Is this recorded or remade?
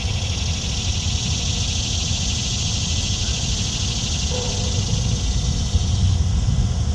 recorded